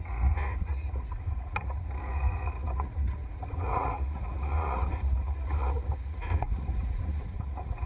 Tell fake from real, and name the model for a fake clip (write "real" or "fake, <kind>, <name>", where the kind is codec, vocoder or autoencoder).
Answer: fake, vocoder, Vocos